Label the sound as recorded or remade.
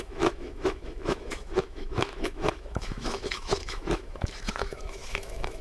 remade